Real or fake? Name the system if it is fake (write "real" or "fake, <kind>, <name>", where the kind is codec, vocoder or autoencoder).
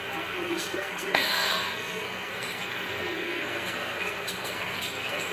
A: fake, codec, SNAC